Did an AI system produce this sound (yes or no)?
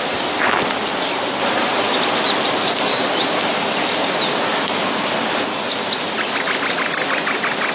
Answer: no